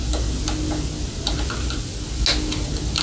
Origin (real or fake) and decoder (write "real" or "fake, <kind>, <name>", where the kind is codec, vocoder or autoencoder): real